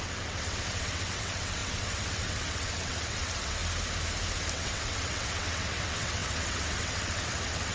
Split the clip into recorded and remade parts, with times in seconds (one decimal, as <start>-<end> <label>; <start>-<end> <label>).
0.0-3.6 remade; 3.6-4.5 recorded; 4.5-7.7 remade